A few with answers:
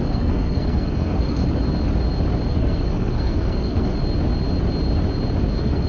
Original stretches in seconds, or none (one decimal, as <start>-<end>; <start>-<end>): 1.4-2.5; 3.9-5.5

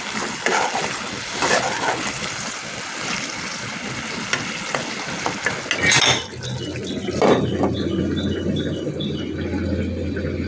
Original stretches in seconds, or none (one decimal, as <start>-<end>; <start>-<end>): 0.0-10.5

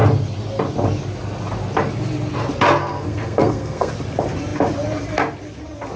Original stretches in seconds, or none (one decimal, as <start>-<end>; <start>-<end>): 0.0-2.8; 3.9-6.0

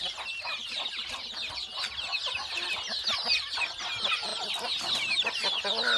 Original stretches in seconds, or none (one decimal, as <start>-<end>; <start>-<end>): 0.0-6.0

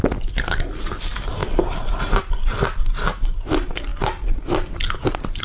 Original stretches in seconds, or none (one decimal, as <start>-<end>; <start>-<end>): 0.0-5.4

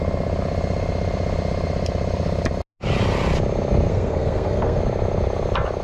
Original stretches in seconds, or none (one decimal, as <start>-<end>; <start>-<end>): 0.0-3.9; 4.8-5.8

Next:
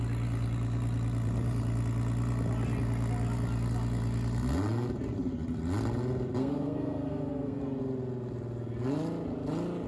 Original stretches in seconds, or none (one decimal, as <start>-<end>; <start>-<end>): 0.0-6.4; 7.6-9.9